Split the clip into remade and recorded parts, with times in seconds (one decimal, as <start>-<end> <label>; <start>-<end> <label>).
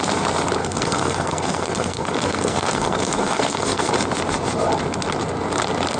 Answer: 0.0-0.6 recorded; 0.6-3.9 remade; 3.9-6.0 recorded